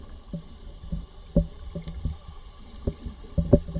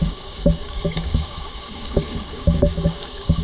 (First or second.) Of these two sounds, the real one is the first